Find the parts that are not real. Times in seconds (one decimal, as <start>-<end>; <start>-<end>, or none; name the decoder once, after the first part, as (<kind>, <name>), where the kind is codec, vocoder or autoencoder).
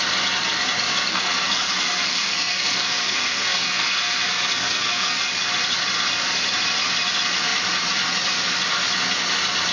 1.1-5.3 (codec, SNAC)